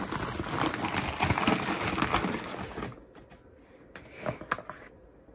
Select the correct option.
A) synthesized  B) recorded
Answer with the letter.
B